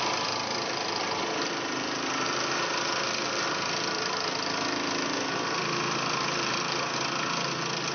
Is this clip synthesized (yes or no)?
yes